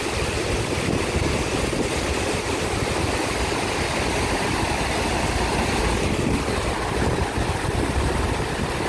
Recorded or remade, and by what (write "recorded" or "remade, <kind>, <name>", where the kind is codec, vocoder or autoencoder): recorded